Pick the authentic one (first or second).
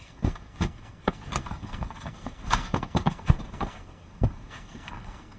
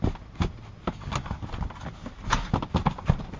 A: second